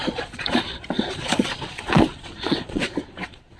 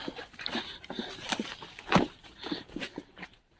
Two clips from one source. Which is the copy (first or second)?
first